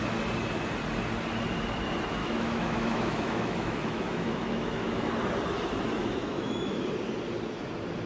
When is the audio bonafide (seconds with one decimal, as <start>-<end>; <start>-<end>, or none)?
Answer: 0.0-2.2; 5.1-6.0; 6.7-8.1